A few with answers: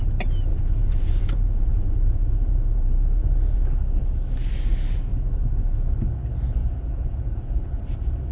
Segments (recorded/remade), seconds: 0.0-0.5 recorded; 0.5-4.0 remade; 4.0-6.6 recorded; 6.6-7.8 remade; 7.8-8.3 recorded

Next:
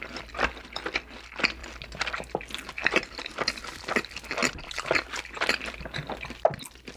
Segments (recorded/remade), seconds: 0.0-2.8 recorded; 2.8-3.3 remade; 3.3-7.0 recorded

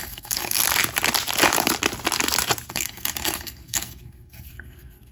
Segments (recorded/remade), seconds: 0.0-0.6 remade; 0.6-2.7 recorded; 2.7-5.1 remade

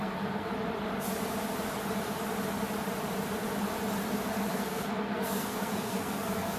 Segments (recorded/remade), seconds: 0.0-0.5 remade; 0.5-4.5 recorded; 4.5-6.6 remade

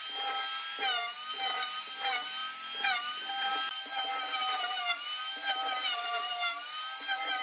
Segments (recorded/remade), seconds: 0.0-7.4 recorded

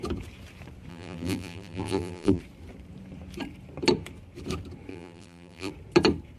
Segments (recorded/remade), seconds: 0.0-0.9 recorded; 0.9-2.4 remade; 2.4-4.9 recorded; 4.9-5.7 remade; 5.7-6.4 recorded

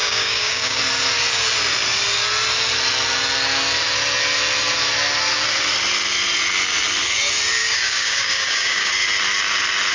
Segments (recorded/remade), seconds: 0.0-0.8 remade; 0.8-7.6 recorded; 7.6-8.9 remade; 8.9-9.9 recorded

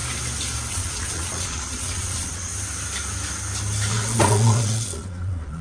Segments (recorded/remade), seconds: 0.0-0.7 recorded; 0.7-2.5 remade; 2.5-3.9 recorded; 3.9-5.6 remade